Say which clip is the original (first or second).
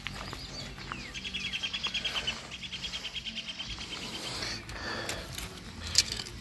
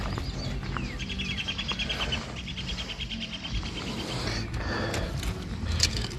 first